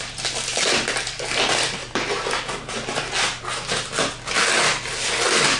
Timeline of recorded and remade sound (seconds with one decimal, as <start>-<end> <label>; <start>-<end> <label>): 0.0-5.6 recorded